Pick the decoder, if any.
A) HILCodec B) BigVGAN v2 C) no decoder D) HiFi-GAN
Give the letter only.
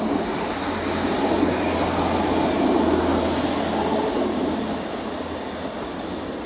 C